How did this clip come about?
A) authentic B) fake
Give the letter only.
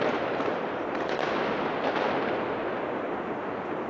A